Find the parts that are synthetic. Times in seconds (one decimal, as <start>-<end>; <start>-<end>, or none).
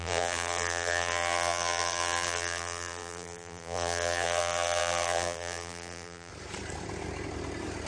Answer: 0.0-6.3